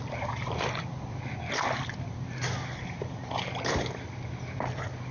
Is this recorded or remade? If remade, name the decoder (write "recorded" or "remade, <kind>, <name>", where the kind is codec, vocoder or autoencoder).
recorded